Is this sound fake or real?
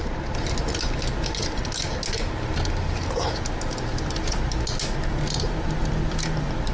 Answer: real